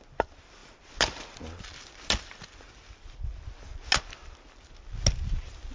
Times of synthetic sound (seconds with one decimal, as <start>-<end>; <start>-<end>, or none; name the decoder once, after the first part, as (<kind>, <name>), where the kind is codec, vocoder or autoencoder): none